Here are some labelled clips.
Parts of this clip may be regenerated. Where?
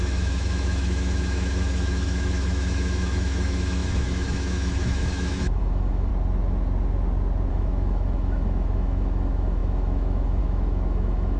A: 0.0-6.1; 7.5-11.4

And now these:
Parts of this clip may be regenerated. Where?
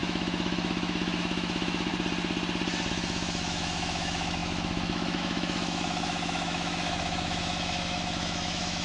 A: 0.0-1.9; 2.9-8.8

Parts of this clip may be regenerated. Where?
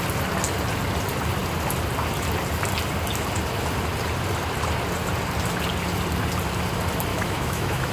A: 7.1-7.9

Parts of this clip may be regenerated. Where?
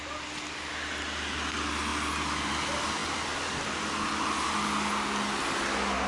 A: none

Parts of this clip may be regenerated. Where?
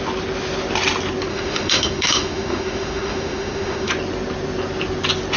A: 1.3-3.9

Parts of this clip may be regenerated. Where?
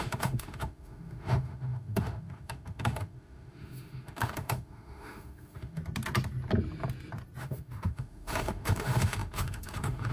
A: 0.0-5.8; 7.4-10.1